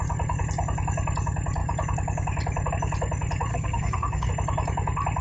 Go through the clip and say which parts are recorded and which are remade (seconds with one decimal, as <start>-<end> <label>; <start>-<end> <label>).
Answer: 0.0-3.5 recorded; 3.5-4.3 remade; 4.3-5.2 recorded